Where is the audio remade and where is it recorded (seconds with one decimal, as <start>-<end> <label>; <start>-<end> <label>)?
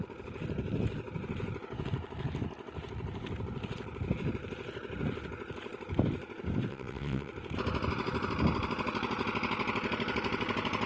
0.0-6.7 recorded; 6.7-7.3 remade; 7.3-10.9 recorded